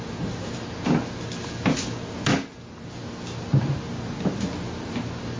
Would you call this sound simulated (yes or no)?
no